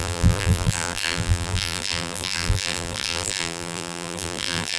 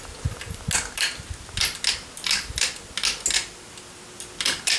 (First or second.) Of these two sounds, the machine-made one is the first